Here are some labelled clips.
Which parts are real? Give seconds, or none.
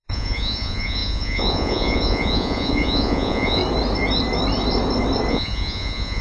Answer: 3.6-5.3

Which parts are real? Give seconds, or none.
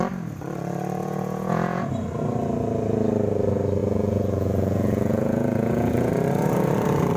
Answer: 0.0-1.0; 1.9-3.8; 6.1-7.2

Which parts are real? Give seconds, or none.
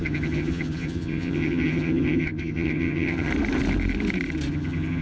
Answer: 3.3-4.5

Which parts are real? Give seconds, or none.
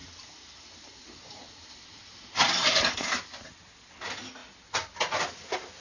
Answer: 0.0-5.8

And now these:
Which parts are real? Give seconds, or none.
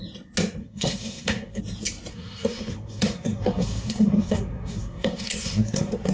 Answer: 0.0-0.6; 1.6-2.1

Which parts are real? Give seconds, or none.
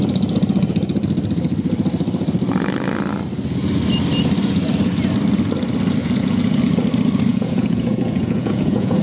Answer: 0.0-6.0; 6.6-7.3